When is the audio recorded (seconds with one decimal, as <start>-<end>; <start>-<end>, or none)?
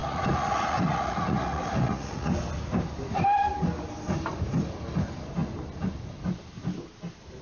2.3-7.4